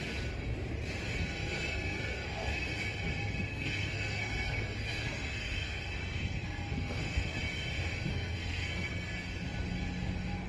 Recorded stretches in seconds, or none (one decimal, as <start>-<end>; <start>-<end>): 0.0-1.4; 2.5-3.5; 7.4-8.1; 8.9-10.5